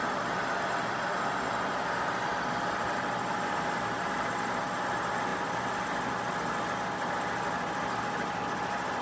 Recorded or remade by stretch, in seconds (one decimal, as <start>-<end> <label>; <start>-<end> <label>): 0.0-4.6 remade; 4.6-9.0 recorded